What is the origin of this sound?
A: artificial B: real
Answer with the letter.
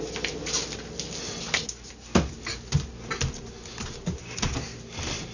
B